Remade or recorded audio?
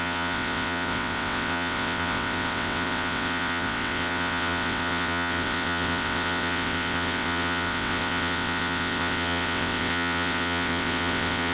remade